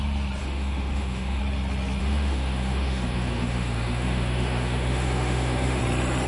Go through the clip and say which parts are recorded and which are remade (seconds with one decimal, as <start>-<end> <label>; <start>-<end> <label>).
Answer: 0.0-0.4 recorded; 0.4-1.4 remade; 1.4-2.0 recorded; 2.0-5.8 remade; 5.8-6.3 recorded